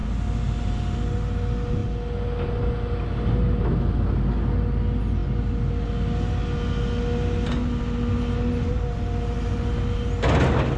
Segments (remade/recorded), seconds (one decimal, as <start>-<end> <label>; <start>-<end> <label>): 0.0-10.8 recorded